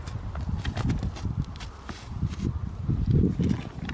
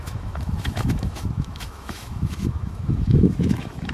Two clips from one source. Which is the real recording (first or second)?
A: first